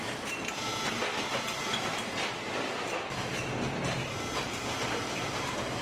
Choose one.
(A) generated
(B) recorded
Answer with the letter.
B